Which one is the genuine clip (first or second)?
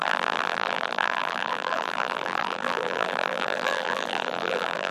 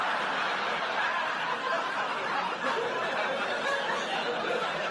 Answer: second